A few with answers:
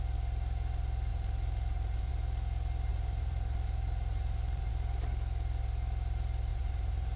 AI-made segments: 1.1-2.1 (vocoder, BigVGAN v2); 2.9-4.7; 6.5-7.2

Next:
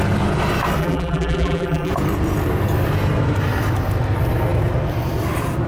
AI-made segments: 0.8-1.9 (vocoder, BigVGAN v2)

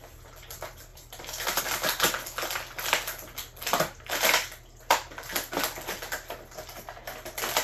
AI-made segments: 0.9-1.6 (vocoder, BigVGAN v2)

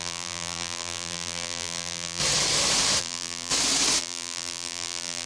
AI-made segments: 0.0-2.2 (vocoder, BigVGAN v2); 3.0-3.5; 4.0-5.3

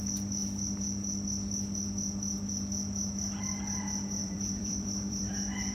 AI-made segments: 4.2-5.3 (vocoder, BigVGAN v2)

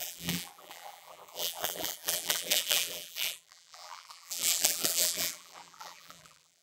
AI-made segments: 0.0-6.6 (vocoder, BigVGAN v2)